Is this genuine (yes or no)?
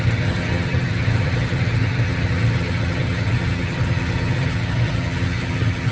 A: no